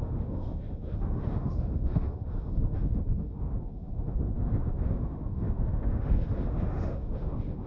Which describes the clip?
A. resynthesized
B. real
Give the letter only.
A